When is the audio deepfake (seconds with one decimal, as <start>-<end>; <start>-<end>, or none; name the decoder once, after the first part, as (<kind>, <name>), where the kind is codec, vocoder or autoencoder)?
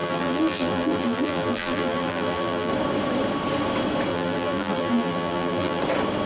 0.0-2.7 (vocoder, BigVGAN v2); 4.1-5.8